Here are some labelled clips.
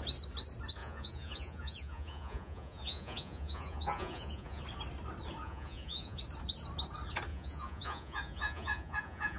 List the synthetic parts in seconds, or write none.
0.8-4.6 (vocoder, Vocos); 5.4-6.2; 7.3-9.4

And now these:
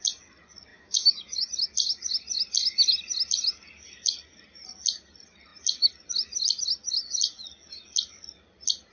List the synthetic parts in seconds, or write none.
0.7-1.5 (autoencoder, DAC-VAE)

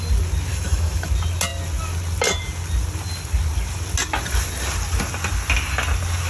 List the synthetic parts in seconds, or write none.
0.5-1.1 (autoencoder, DAC-VAE)

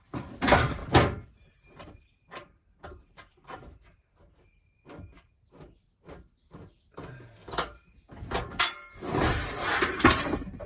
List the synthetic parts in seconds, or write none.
0.0-0.8 (vocoder, BigVGAN v2); 1.5-3.9; 8.9-10.7